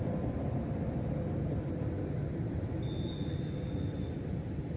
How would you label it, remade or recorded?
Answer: recorded